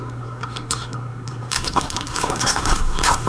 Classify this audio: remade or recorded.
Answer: remade